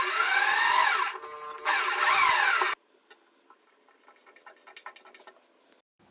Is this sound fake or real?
real